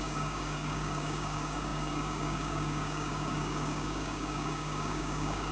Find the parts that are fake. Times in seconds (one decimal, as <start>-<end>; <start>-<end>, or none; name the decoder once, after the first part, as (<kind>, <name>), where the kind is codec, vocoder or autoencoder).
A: 0.0-5.5 (codec, DAC)